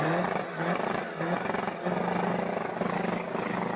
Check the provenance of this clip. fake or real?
real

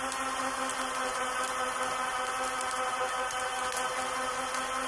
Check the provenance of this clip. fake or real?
real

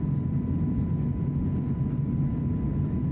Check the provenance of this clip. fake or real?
real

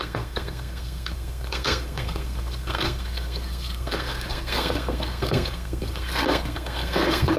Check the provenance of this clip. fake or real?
fake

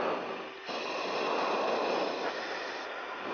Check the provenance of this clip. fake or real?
real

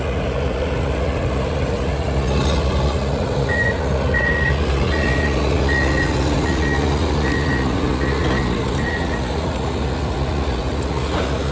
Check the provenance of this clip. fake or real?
fake